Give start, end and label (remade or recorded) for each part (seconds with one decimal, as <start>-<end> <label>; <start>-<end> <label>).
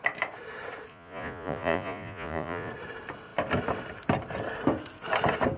0.0-0.9 recorded; 0.9-2.7 remade; 2.7-5.6 recorded